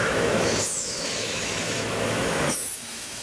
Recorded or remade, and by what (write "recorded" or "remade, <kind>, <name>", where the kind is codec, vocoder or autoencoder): remade, autoencoder, DAC-VAE